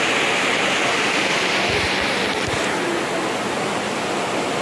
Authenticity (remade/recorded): recorded